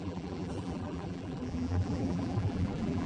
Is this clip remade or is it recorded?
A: remade